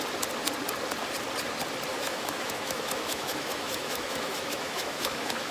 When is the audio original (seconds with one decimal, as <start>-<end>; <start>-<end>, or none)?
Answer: 0.0-1.9